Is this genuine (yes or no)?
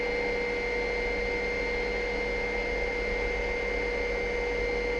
yes